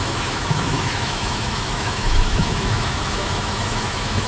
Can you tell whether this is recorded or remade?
remade